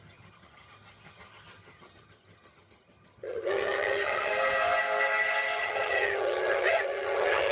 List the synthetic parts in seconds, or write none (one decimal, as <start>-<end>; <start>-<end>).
0.0-4.3; 5.6-7.5